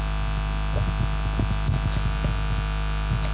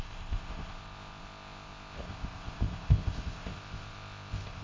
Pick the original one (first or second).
first